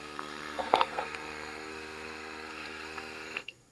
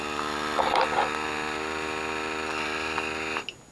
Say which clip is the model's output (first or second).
first